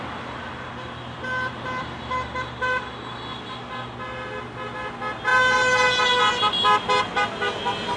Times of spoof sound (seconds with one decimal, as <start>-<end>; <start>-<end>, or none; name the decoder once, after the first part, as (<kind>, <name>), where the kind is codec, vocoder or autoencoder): none